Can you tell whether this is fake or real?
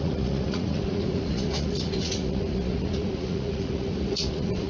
fake